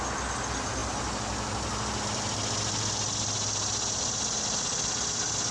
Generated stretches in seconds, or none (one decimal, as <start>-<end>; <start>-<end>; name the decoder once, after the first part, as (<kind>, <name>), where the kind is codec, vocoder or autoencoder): none